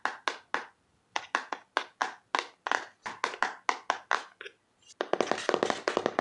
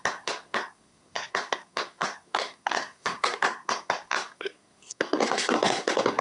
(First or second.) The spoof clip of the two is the second